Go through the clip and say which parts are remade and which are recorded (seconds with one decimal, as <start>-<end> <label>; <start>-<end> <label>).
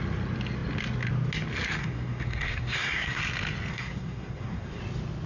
0.0-1.8 recorded; 1.8-3.2 remade; 3.2-3.7 recorded; 3.7-4.8 remade; 4.8-5.3 recorded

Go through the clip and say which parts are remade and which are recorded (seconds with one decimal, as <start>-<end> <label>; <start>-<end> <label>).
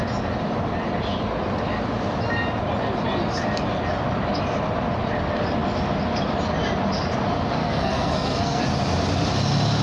0.0-7.6 recorded; 7.6-8.6 remade; 8.6-9.8 recorded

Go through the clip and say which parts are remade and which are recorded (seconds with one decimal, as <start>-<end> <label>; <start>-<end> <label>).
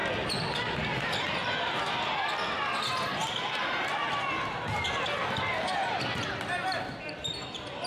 0.0-7.9 recorded